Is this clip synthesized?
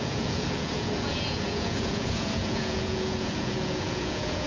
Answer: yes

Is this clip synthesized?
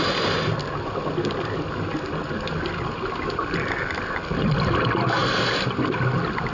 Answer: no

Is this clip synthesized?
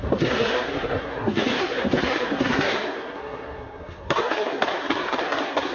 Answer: yes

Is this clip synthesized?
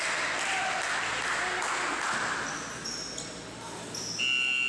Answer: no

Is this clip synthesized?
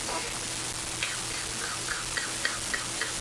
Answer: no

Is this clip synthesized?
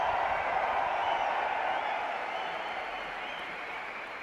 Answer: yes